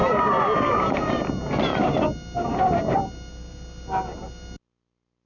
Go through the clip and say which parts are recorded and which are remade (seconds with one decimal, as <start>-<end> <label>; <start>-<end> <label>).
0.0-5.3 recorded